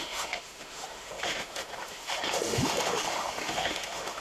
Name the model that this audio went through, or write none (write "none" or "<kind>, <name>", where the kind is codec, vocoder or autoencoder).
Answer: autoencoder, DAC-VAE